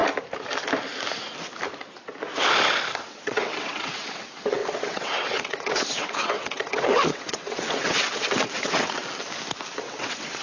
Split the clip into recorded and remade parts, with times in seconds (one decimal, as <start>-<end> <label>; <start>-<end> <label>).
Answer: 0.0-3.0 recorded; 3.0-9.0 remade; 9.0-9.8 recorded; 9.8-10.4 remade